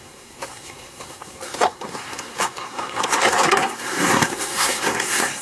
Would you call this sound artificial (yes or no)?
yes